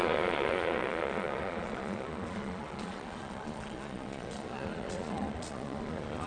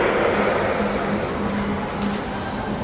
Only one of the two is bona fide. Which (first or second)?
second